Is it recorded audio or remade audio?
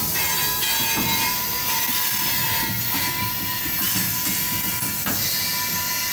recorded